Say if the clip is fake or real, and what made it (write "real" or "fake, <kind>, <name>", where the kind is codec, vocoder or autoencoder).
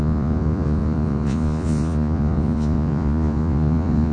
fake, vocoder, Vocos